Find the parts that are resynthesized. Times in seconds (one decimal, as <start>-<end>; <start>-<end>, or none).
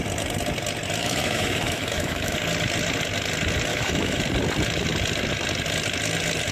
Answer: 1.0-2.3; 3.7-4.2